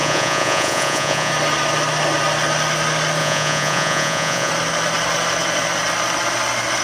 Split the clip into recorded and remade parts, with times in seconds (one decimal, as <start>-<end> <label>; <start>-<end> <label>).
0.0-1.3 remade; 1.3-3.2 recorded; 3.2-4.5 remade; 4.5-6.8 recorded

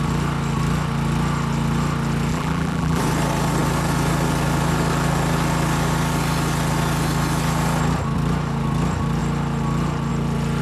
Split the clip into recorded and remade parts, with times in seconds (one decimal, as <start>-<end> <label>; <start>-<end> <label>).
0.0-2.3 recorded; 2.3-3.0 remade; 3.0-10.6 recorded

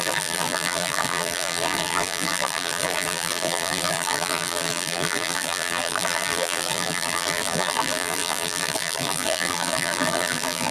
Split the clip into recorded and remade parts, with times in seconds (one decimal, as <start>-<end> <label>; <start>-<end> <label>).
0.0-10.7 remade

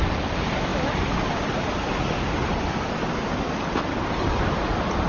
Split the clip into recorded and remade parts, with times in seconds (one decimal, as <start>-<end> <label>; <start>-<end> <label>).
0.0-5.1 recorded